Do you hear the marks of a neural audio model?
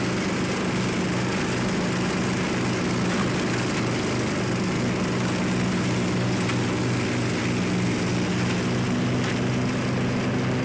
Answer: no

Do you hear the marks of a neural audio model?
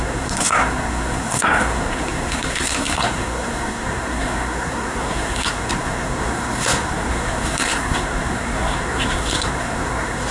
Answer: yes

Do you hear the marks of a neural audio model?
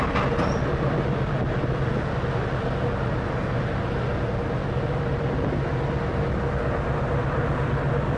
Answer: no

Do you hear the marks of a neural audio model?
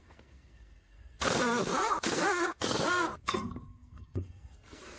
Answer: yes